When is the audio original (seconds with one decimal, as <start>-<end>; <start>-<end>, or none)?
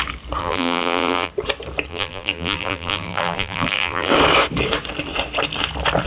0.0-0.4; 1.3-1.9; 4.1-6.1